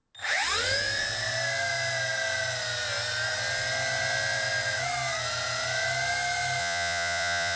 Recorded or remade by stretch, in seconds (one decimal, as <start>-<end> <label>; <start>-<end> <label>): 0.0-6.6 recorded; 6.6-7.6 remade